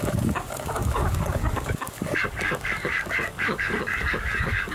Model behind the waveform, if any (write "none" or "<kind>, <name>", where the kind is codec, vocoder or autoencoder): codec, DAC